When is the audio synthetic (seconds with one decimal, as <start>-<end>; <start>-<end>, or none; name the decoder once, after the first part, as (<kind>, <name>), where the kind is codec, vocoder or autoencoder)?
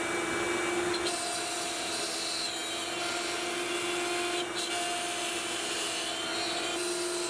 none